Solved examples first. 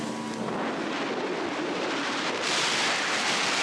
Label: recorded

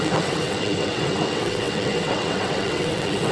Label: remade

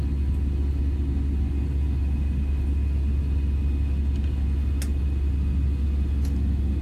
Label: recorded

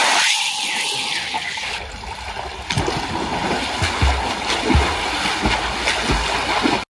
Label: recorded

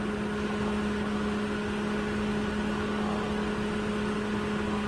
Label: recorded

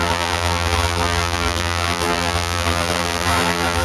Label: remade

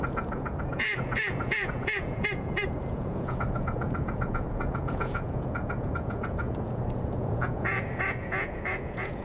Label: remade